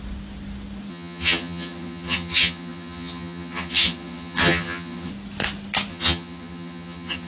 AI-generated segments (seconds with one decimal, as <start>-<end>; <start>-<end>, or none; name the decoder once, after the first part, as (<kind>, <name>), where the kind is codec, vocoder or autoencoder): 0.9-5.1 (vocoder, HiFi-GAN); 5.9-7.3

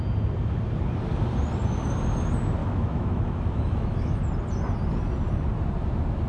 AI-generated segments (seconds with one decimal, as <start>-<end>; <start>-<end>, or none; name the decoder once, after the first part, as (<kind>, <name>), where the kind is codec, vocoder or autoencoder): 2.6-4.2 (autoencoder, DAC-VAE)

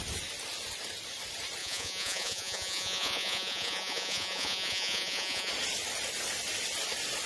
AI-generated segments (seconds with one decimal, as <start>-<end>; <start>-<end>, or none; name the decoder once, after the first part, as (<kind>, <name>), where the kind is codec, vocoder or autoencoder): 1.6-5.5 (vocoder, Vocos)

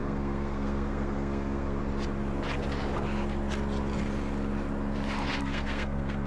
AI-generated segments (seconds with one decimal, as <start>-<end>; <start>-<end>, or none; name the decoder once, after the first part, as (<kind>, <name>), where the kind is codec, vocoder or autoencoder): 0.0-1.8 (codec, SNAC); 5.4-6.3

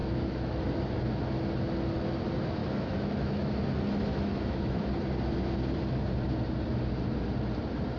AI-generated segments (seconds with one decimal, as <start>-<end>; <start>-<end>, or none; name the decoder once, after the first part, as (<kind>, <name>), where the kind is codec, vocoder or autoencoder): 0.0-0.6 (autoencoder, DAC-VAE); 2.6-3.5; 4.1-4.9

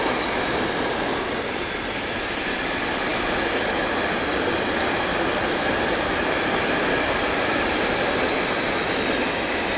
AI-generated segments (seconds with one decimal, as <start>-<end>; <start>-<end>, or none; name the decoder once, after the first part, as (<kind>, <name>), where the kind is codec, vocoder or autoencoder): none

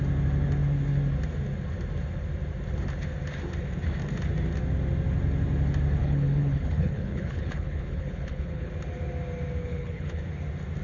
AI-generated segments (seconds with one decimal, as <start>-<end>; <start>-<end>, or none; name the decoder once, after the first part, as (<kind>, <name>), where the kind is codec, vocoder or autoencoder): 6.0-8.7 (codec, HILCodec); 9.6-10.2

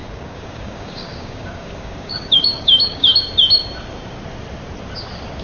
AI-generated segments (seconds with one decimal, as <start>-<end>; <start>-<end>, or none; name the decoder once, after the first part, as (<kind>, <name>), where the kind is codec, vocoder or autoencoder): 0.0-3.2 (codec, DAC)